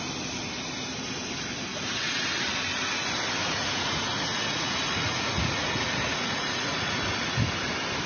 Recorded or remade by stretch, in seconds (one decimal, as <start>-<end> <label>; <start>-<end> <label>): 0.0-1.7 recorded; 1.7-2.2 remade; 2.2-3.4 recorded; 3.4-7.4 remade; 7.4-8.1 recorded